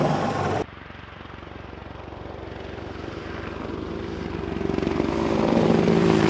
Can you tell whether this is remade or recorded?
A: remade